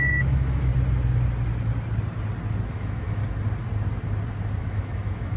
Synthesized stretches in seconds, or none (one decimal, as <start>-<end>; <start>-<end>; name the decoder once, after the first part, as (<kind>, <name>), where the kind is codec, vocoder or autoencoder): 0.0-0.7 (autoencoder, DAC-VAE); 2.7-3.2; 4.6-5.4